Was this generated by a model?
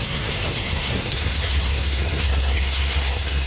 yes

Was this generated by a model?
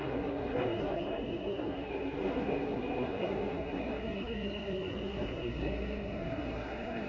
yes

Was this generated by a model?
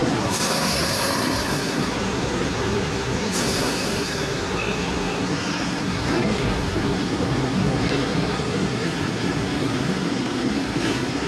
yes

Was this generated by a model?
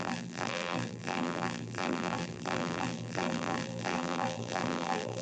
yes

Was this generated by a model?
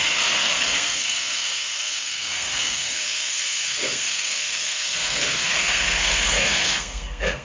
yes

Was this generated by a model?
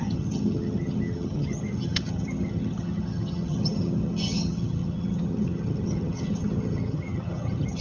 yes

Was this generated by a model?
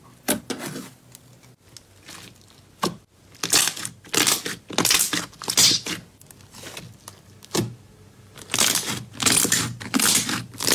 no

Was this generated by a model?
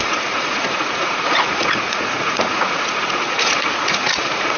yes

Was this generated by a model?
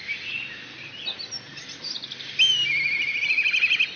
no